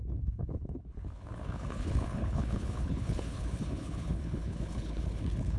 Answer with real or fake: fake